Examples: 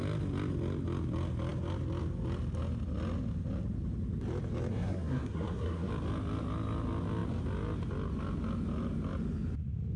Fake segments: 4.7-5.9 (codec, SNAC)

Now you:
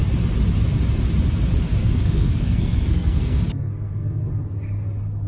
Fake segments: 1.8-4.3 (codec, SNAC)

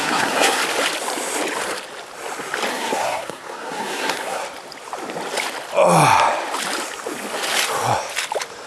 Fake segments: 0.0-0.6 (codec, SNAC); 2.7-4.4